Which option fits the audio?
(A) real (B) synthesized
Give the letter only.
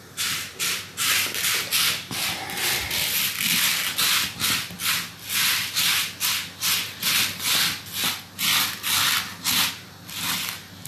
A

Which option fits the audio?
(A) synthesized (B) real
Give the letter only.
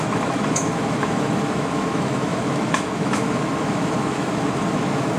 A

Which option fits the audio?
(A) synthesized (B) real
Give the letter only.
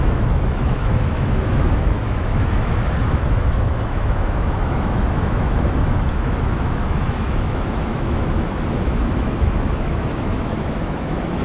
A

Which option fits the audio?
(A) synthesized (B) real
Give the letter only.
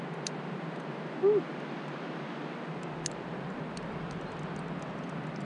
B